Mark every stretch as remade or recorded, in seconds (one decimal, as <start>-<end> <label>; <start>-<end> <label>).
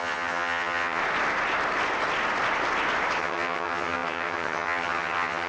0.0-1.0 remade; 1.0-3.2 recorded; 3.2-5.5 remade